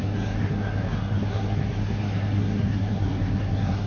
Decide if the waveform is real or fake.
fake